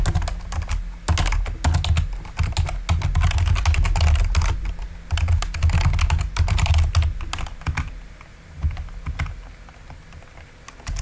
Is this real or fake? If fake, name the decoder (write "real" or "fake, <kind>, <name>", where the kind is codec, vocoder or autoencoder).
real